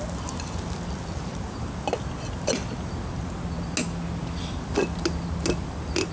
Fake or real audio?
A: real